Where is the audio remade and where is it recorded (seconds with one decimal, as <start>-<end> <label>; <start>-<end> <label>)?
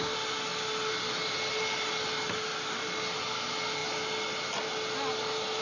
0.0-5.6 recorded